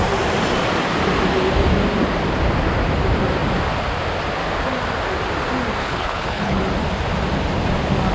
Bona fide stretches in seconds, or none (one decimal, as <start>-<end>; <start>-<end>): 0.0-5.8; 6.6-8.1